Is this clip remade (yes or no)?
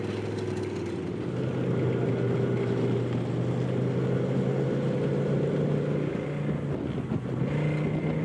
no